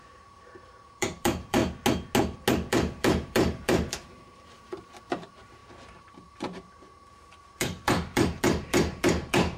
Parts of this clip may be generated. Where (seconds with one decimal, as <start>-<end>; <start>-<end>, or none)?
0.0-1.6; 2.7-9.6